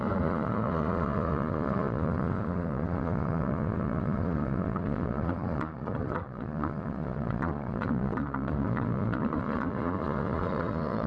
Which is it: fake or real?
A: fake